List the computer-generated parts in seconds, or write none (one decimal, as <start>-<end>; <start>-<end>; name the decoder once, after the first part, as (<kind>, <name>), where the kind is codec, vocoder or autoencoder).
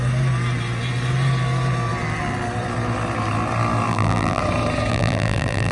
3.9-4.4 (vocoder, BigVGAN v2); 4.9-5.7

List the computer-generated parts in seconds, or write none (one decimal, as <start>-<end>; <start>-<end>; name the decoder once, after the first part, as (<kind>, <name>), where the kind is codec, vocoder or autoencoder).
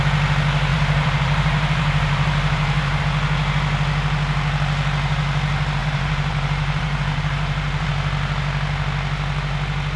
0.7-3.0 (vocoder, BigVGAN v2); 5.8-7.9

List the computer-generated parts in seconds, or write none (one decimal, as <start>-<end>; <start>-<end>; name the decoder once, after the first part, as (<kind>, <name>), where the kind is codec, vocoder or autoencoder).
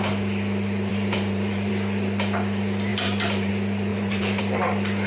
0.9-1.7 (vocoder, BigVGAN v2); 2.9-3.5; 3.9-4.4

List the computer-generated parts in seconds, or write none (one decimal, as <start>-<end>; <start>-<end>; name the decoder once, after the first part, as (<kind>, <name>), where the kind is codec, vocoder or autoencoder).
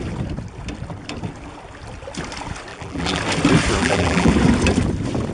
2.7-3.2 (vocoder, BigVGAN v2); 3.8-4.3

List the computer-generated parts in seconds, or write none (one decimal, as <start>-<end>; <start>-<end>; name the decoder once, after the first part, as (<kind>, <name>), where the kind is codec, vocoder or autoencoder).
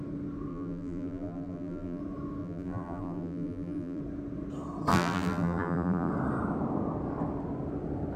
0.5-2.0 (vocoder, BigVGAN v2); 2.4-4.0; 4.9-6.1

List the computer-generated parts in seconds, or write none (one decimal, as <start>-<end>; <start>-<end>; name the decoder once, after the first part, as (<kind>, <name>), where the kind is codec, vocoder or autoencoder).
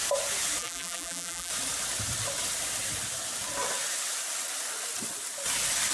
0.6-1.5 (vocoder, BigVGAN v2)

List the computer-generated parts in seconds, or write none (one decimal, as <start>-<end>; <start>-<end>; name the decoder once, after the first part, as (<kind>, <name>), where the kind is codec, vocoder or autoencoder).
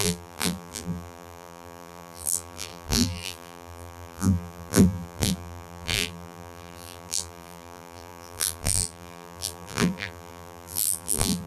0.0-11.5 (vocoder, BigVGAN v2)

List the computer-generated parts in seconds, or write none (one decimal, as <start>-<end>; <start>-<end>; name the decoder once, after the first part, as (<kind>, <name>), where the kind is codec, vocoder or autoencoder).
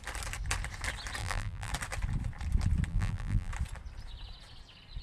1.2-1.7 (vocoder, BigVGAN v2); 2.9-3.5